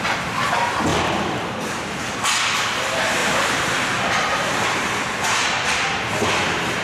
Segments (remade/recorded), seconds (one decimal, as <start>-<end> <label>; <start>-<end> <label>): 0.0-0.9 recorded; 0.9-2.1 remade; 2.1-3.2 recorded; 3.2-6.0 remade; 6.0-6.8 recorded